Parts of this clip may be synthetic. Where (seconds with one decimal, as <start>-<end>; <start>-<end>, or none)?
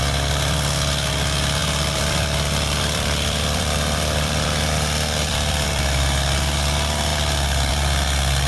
1.6-5.8